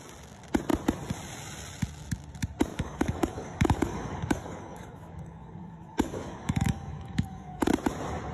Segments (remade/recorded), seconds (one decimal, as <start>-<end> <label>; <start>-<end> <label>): 0.0-2.7 recorded; 2.7-7.7 remade; 7.7-8.3 recorded